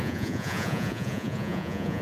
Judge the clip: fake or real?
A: fake